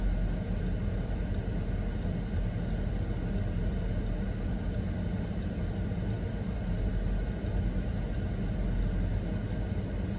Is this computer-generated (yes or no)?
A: no